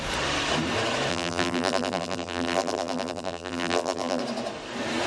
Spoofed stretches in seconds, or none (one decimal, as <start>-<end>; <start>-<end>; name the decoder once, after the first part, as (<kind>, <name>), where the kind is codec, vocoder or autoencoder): 1.1-4.2 (vocoder, BigVGAN v2)